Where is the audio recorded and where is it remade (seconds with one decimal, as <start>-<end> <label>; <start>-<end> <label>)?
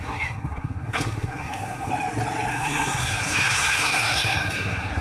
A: 0.0-1.9 remade; 1.9-2.5 recorded; 2.5-5.0 remade